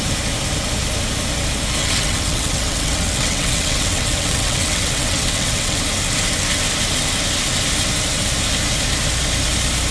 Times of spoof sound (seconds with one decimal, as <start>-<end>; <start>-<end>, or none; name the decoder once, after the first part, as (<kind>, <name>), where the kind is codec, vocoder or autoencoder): 1.8-5.8 (vocoder, WaveNeXt)